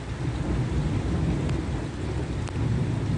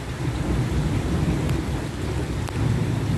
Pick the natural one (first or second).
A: first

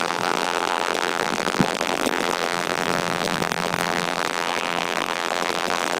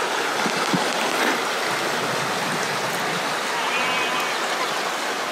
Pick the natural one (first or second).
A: second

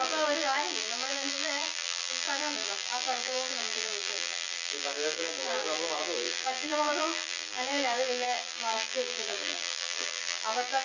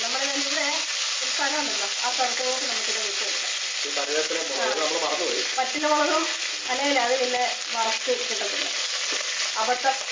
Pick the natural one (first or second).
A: second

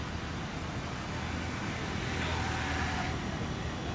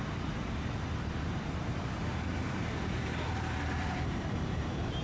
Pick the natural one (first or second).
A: first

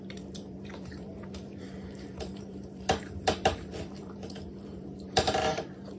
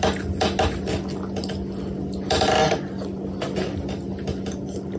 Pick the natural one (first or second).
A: second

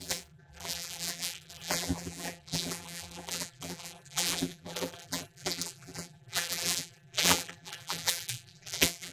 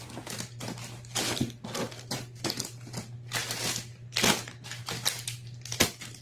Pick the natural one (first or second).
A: second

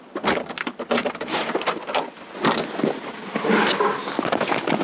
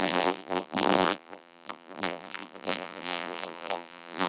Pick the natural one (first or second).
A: first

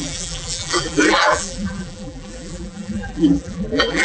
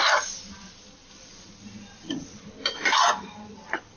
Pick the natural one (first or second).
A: second